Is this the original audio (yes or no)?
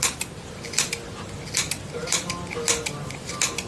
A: yes